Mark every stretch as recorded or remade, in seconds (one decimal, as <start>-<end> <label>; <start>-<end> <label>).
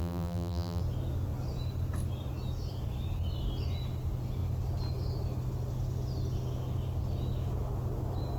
0.0-0.8 remade; 0.8-8.4 recorded